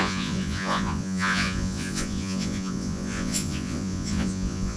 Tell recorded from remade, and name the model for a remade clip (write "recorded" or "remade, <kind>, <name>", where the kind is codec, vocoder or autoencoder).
remade, vocoder, Vocos